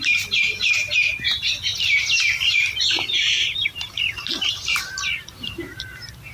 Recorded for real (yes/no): no